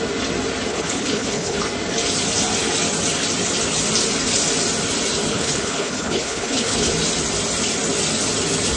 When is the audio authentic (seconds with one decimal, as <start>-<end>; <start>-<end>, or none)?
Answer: 0.0-0.7; 1.6-5.3; 6.9-8.8